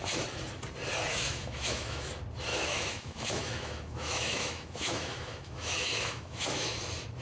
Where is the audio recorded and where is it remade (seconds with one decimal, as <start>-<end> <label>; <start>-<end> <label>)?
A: 0.0-1.1 recorded; 1.1-2.1 remade; 2.1-2.5 recorded; 2.5-6.8 remade; 6.8-7.2 recorded

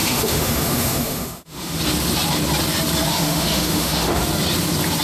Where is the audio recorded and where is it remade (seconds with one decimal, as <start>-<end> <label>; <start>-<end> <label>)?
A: 0.0-1.8 remade; 1.8-3.1 recorded; 3.1-4.2 remade; 4.2-5.0 recorded

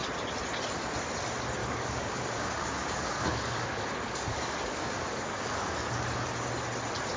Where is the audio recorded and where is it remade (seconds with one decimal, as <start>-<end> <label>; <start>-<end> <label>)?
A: 0.0-1.6 recorded; 1.6-5.9 remade; 5.9-7.2 recorded

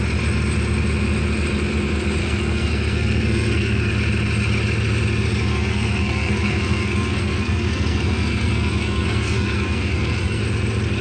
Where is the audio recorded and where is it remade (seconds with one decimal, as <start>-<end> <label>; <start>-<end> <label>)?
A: 0.0-2.2 recorded; 2.2-3.9 remade; 3.9-5.5 recorded; 5.5-10.4 remade; 10.4-11.0 recorded

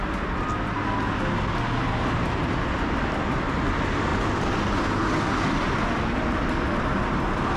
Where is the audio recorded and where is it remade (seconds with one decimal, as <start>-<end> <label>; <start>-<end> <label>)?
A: 0.0-7.6 recorded